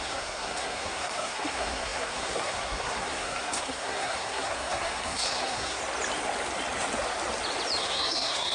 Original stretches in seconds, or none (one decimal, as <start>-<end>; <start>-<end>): 5.8-7.8

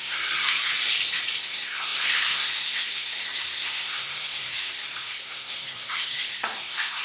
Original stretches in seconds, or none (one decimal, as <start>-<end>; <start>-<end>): 0.7-1.4

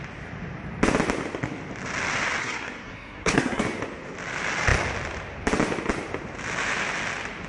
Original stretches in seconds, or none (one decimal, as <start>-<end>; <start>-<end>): 0.0-2.4; 3.6-7.5

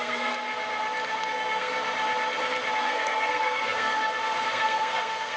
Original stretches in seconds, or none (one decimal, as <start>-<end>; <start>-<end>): 0.5-1.2; 1.7-2.8

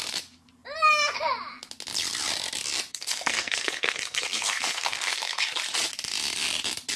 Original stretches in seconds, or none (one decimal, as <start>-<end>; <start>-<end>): 0.0-2.9; 5.4-7.0

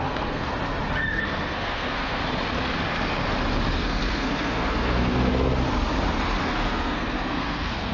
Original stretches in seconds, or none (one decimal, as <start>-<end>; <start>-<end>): 0.5-1.1; 2.2-3.8; 5.3-6.4

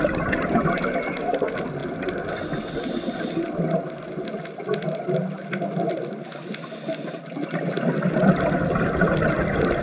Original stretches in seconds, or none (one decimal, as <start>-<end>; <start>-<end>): 0.0-9.8

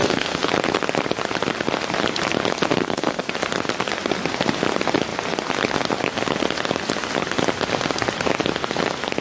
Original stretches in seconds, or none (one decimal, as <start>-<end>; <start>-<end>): 0.5-2.8; 3.3-9.2